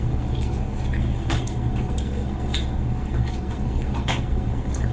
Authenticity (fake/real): fake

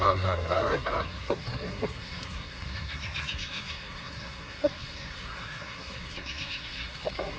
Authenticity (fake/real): fake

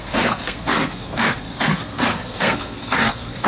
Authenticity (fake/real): fake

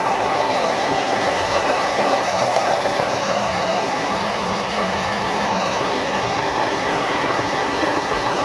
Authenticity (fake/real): fake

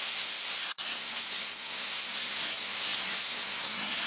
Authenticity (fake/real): fake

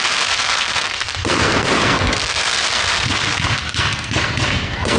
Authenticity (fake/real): fake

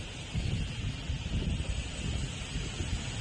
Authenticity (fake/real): real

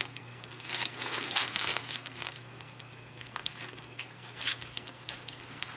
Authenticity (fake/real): fake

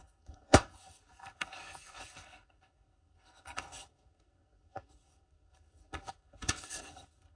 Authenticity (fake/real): fake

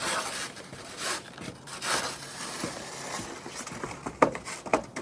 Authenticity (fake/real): real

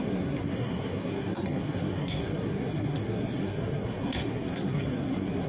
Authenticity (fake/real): fake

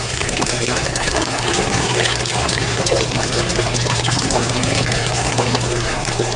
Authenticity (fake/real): fake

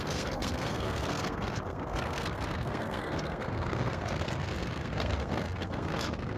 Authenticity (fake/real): fake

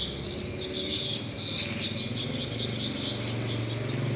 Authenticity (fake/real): real